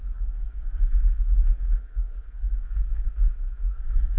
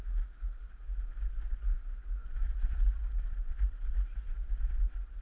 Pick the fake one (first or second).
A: first